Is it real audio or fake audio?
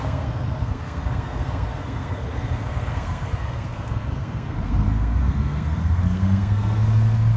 fake